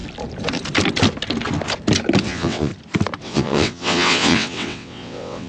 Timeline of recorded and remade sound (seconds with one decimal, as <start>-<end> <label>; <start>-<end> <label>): 0.0-2.2 recorded; 2.2-2.7 remade; 2.7-3.2 recorded; 3.2-5.5 remade

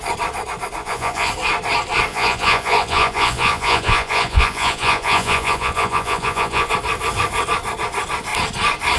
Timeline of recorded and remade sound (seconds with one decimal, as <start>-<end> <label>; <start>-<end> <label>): 0.0-0.8 recorded; 0.8-1.3 remade; 1.3-2.1 recorded; 2.1-6.7 remade; 6.7-9.0 recorded

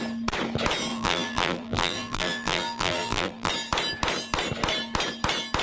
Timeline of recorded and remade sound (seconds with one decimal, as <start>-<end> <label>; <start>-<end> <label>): 0.0-0.9 recorded; 0.9-3.5 remade; 3.5-5.6 recorded